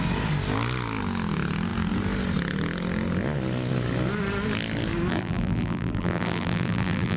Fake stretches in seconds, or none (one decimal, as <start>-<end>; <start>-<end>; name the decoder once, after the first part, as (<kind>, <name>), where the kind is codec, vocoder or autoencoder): 5.1-7.2 (vocoder, BigVGAN v2)